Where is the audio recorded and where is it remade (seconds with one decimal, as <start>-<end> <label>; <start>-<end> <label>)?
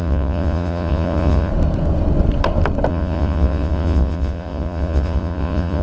0.0-1.5 remade; 1.5-2.9 recorded; 2.9-5.8 remade